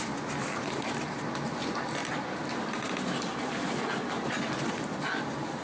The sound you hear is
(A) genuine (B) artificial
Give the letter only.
A